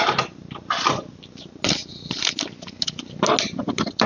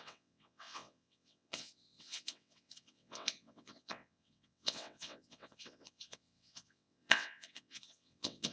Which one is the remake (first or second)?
second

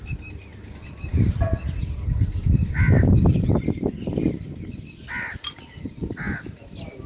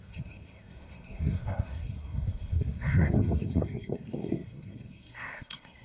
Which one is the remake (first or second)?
second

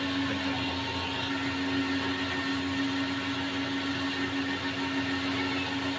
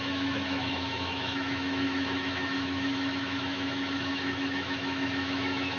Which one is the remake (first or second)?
second